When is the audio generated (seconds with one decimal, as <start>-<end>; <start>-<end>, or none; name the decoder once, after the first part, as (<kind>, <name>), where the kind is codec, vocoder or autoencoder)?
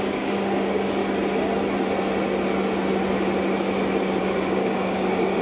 0.0-1.0 (codec, DAC); 4.2-5.4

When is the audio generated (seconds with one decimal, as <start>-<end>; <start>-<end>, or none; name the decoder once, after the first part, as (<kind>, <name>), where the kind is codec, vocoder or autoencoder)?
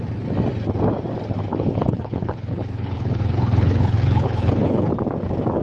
1.5-4.9 (codec, HILCodec)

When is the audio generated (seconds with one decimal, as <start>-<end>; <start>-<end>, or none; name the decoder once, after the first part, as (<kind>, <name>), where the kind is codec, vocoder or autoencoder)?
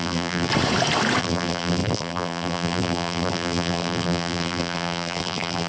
0.0-0.5 (vocoder, BigVGAN v2); 1.2-5.7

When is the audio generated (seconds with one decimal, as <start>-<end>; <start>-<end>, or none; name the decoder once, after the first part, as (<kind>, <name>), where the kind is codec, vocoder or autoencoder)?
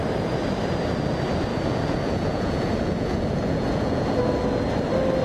1.5-4.2 (vocoder, Vocos)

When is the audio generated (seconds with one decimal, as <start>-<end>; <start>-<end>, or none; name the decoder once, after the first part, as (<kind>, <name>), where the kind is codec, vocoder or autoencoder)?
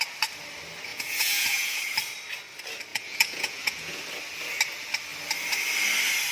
0.9-1.8 (vocoder, Vocos); 2.9-4.0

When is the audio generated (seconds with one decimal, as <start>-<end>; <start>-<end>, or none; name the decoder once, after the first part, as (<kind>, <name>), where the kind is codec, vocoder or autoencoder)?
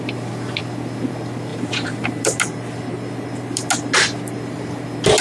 1.5-2.2 (vocoder, BigVGAN v2)